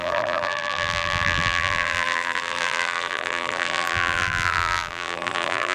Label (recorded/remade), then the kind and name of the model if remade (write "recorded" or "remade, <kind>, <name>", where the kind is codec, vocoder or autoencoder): remade, vocoder, BigVGAN v2